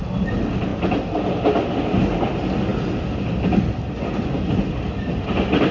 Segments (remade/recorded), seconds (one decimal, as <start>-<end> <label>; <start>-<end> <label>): 0.0-5.7 recorded